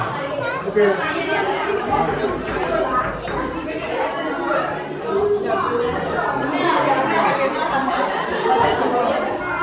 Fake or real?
fake